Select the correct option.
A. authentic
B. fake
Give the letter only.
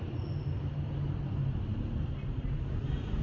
A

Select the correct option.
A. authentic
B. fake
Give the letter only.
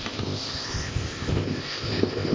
B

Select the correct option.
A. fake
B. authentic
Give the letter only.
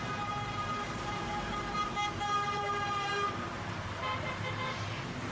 A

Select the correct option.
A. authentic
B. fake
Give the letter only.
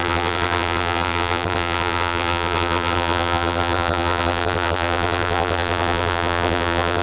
B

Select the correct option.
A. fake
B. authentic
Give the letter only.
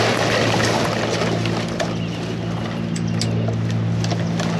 B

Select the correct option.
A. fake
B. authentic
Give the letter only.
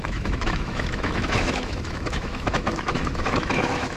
A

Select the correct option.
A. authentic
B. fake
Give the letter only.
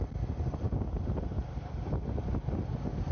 A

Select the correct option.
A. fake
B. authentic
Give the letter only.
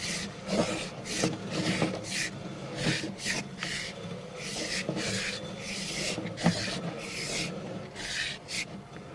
B